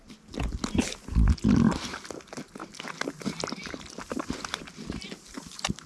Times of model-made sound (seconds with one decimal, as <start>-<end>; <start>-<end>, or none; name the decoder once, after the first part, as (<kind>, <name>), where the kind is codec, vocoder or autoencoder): none